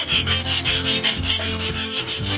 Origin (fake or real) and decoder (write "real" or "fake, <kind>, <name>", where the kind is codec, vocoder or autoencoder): fake, codec, DAC